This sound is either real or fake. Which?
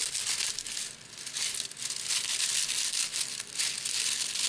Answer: real